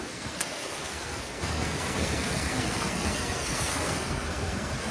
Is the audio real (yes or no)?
no